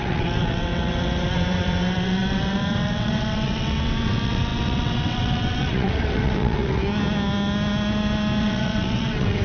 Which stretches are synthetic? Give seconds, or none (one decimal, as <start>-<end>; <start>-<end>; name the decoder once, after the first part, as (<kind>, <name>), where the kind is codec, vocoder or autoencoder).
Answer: 0.0-6.8 (vocoder, WaveNeXt); 8.4-9.4